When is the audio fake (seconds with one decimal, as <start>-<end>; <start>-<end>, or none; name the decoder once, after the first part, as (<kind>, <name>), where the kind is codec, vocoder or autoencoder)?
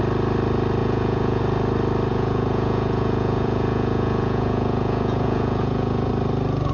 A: 0.8-1.4 (vocoder, Vocos); 2.1-6.1